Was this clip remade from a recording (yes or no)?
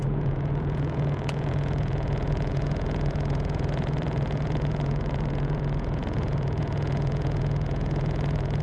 yes